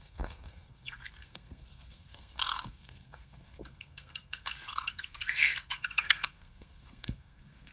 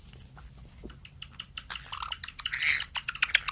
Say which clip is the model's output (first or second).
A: first